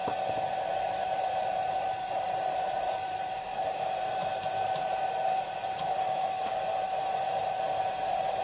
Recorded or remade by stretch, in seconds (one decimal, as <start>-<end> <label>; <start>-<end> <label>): 0.0-0.7 recorded; 0.7-8.4 remade